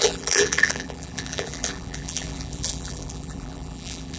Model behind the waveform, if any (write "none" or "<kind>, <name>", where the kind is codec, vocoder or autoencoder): vocoder, BigVGAN v2